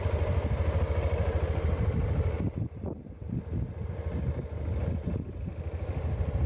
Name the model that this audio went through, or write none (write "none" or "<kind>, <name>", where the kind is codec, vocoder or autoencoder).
none